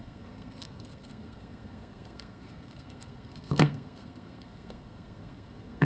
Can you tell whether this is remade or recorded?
remade